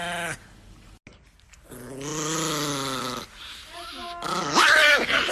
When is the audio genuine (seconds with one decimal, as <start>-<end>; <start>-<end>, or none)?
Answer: 0.0-5.3